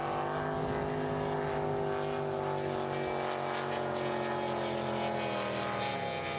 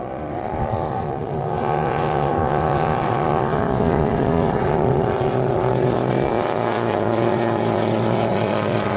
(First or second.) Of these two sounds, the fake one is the second